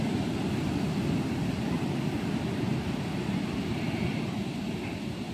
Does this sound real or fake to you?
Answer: real